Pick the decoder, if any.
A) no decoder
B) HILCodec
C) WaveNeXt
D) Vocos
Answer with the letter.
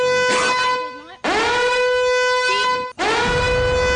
A